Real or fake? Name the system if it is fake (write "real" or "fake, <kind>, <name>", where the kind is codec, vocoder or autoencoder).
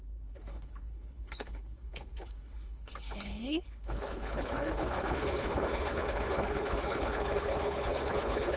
fake, codec, HILCodec